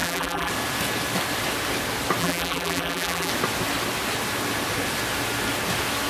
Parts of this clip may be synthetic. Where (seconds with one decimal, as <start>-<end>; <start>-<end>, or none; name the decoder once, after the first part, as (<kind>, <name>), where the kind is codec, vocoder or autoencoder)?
0.0-0.5 (vocoder, BigVGAN v2); 2.2-3.3